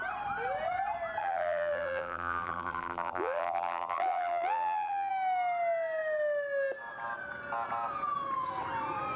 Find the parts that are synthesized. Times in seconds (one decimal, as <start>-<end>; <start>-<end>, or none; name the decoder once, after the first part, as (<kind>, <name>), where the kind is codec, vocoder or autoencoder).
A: 1.2-5.1 (vocoder, BigVGAN v2)